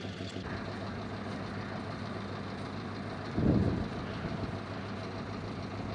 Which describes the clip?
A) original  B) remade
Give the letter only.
A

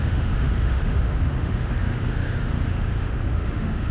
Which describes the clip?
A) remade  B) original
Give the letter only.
A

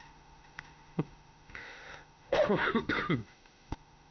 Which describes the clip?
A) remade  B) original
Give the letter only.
A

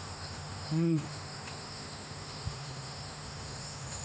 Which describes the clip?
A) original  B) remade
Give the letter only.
B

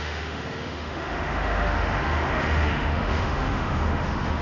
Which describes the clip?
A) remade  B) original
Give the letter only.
A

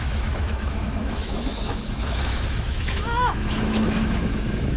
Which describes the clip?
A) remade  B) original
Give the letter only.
A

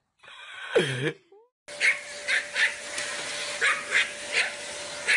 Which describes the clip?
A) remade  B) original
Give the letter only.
B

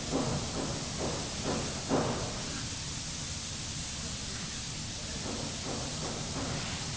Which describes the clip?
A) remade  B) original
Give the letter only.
B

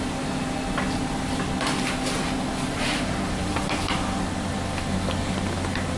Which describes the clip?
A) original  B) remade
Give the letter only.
A